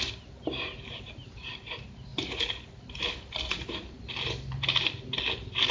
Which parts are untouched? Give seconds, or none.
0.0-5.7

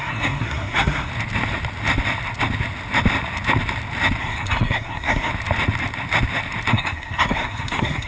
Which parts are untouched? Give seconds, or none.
1.1-4.2; 5.3-6.7

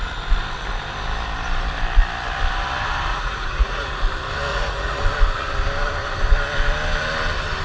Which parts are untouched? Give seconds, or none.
0.0-3.1; 4.0-4.5; 5.0-7.6